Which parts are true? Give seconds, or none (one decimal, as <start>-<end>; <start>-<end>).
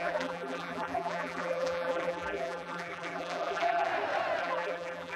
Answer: 3.9-4.4